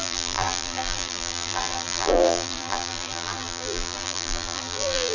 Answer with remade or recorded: remade